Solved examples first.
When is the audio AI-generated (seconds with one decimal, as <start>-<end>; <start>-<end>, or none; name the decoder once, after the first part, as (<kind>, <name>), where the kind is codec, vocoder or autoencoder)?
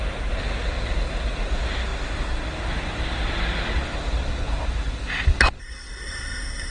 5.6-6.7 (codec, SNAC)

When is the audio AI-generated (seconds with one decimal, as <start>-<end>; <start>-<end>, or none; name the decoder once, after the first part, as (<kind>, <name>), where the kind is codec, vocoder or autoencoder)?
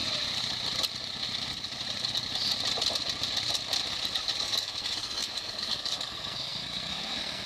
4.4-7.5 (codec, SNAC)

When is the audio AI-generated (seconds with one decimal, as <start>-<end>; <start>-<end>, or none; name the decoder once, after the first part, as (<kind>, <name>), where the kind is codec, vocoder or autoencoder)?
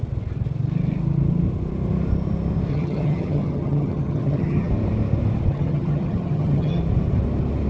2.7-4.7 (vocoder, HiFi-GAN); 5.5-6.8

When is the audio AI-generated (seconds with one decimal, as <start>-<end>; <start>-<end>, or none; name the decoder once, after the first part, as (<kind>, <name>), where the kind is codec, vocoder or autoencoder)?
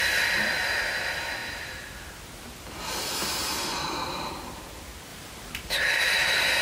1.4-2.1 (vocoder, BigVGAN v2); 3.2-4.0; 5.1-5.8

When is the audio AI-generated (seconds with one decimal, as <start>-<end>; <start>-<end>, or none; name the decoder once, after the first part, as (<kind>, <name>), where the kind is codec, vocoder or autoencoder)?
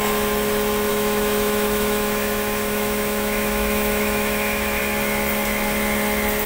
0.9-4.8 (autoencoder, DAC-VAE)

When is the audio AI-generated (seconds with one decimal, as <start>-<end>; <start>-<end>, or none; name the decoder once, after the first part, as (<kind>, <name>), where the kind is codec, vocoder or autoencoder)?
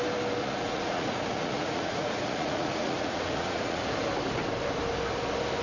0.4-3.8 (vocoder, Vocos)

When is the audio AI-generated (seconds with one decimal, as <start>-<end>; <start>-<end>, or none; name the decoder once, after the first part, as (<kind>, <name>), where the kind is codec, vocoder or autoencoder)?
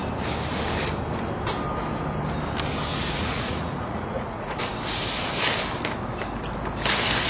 2.9-4.6 (vocoder, Vocos)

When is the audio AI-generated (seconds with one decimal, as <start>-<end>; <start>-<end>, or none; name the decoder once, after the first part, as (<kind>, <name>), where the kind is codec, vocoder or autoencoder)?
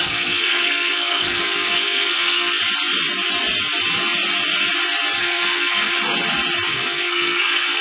0.0-2.6 (codec, SNAC); 5.2-5.9; 6.7-7.8